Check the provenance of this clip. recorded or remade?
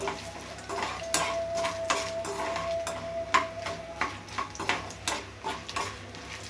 recorded